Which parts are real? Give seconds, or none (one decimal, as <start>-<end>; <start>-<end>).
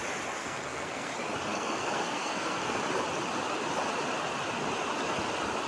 0.0-0.4; 1.1-1.5; 2.8-5.7